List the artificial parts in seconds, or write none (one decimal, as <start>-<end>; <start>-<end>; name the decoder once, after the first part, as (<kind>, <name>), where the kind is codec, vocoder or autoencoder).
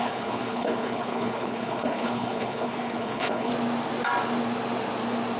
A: 0.0-3.5 (codec, HILCodec)